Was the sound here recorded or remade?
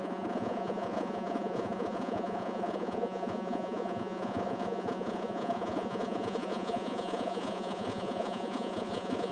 remade